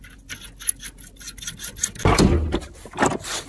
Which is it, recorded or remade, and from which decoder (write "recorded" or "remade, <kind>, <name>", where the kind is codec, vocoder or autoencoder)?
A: recorded